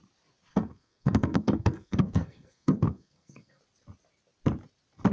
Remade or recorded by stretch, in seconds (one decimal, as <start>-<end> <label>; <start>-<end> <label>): 0.0-0.5 recorded; 0.5-3.6 remade; 3.6-5.1 recorded